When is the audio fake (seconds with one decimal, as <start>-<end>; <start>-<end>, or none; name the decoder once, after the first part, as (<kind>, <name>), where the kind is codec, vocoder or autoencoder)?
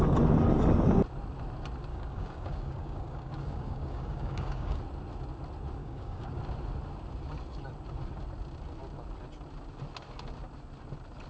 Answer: 1.9-4.8 (codec, DAC); 5.8-6.4